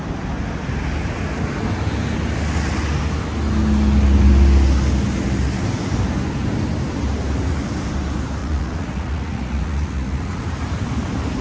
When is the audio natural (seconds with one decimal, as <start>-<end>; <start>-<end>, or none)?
0.0-8.4; 10.4-11.4